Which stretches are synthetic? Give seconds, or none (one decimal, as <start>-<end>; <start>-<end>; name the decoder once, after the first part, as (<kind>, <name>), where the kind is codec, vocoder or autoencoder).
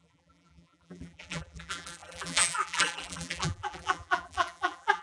0.0-5.0 (vocoder, BigVGAN v2)